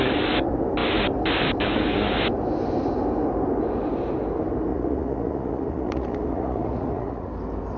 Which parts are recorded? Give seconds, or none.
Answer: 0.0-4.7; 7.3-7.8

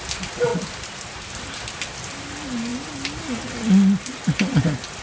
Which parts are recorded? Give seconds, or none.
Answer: 0.0-5.0

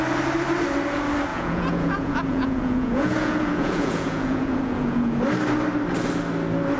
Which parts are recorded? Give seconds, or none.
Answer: 0.0-1.3; 5.2-6.8

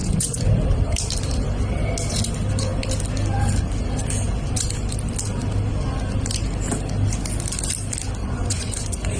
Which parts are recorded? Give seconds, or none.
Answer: 0.5-8.2

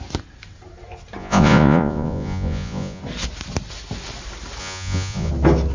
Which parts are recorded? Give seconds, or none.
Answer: 0.0-1.2; 3.0-4.6; 5.3-5.7